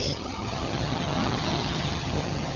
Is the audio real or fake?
fake